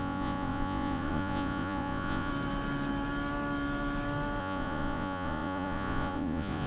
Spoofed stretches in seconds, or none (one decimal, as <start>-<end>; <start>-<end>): 0.0-2.3; 4.4-6.7